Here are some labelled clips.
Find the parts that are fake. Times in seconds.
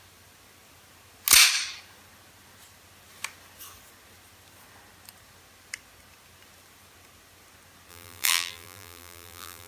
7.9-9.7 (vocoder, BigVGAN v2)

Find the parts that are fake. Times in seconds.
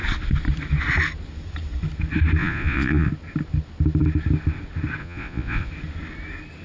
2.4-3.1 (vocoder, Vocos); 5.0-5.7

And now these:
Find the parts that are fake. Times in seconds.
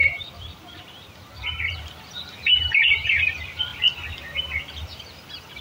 1.7-3.7 (vocoder, BigVGAN v2); 5.0-5.6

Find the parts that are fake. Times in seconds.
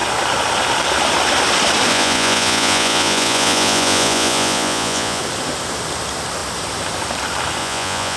1.9-5.2 (vocoder, Vocos); 7.6-8.2